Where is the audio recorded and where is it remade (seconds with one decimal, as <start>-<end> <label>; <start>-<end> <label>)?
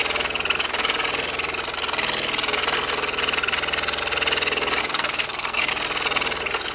0.0-4.8 recorded; 4.8-5.7 remade; 5.7-6.7 recorded